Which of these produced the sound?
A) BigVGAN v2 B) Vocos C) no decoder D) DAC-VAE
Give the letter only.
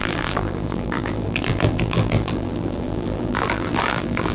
A